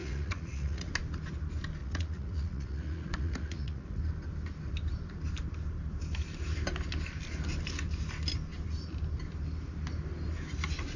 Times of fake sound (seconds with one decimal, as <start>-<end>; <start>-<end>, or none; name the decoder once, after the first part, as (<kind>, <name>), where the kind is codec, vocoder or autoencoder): 0.0-0.9 (vocoder, Vocos); 1.8-4.0